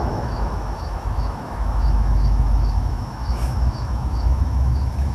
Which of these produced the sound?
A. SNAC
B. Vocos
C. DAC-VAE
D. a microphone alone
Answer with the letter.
C